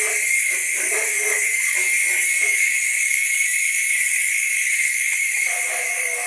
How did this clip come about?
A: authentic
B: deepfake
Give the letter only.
B